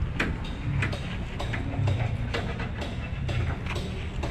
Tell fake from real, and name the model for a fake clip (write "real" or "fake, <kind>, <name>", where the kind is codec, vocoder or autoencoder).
real